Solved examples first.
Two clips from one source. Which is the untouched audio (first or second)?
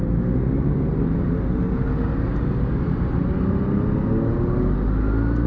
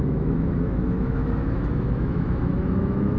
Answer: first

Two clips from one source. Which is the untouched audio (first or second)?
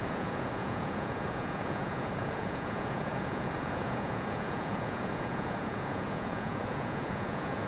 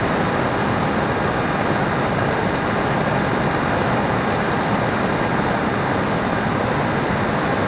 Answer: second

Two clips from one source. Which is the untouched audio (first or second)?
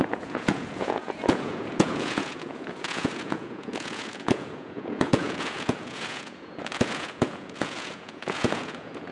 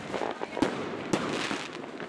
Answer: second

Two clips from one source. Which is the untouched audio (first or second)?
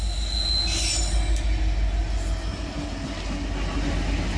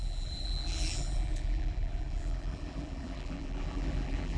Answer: first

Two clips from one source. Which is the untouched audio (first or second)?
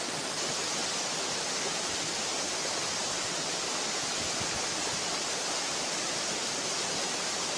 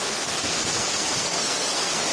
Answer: first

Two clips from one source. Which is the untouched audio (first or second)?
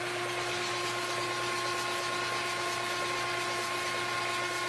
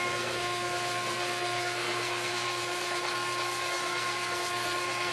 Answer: first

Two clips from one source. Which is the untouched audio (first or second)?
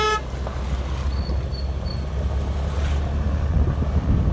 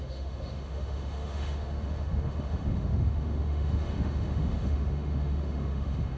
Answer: first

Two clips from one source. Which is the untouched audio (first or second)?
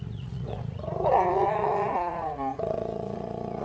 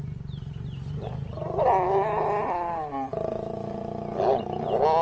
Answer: second